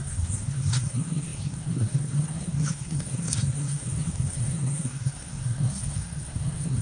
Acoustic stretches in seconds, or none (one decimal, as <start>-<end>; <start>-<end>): none